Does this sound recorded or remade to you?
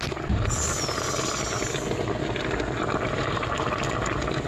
recorded